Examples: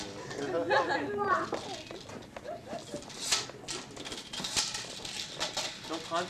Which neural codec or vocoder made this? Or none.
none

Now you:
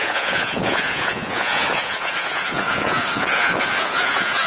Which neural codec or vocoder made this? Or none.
vocoder, Vocos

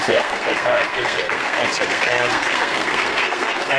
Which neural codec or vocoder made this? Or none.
codec, SNAC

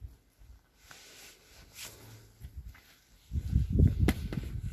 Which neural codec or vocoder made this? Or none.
none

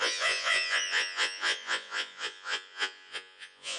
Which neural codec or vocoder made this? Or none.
vocoder, Vocos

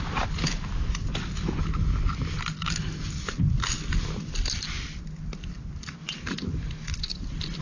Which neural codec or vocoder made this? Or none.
none